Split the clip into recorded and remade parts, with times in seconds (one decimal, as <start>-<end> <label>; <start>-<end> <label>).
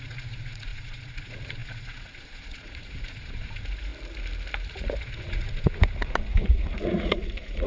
0.0-3.9 remade; 3.9-4.7 recorded; 4.7-7.7 remade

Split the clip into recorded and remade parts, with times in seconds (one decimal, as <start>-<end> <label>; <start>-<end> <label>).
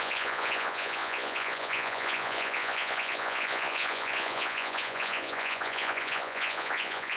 0.0-7.2 remade